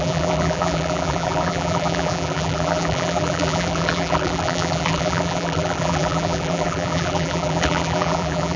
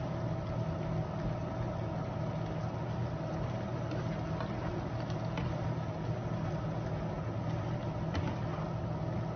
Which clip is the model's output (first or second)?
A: first